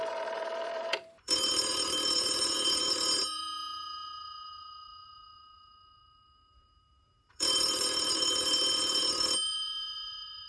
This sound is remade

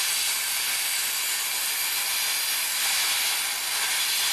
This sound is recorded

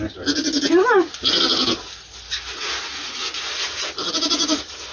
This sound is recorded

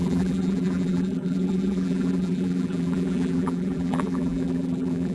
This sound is remade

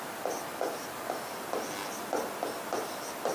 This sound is recorded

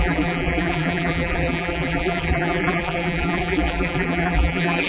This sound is remade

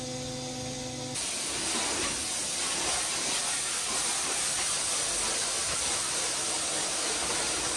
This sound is recorded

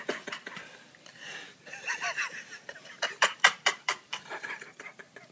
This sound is remade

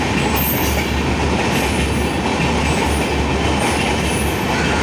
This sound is recorded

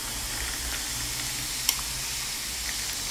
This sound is recorded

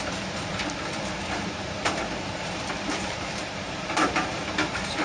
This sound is remade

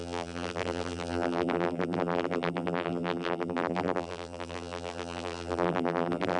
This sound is remade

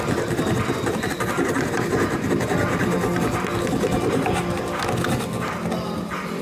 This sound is recorded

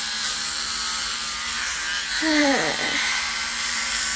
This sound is remade